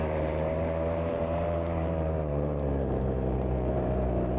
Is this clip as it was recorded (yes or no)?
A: no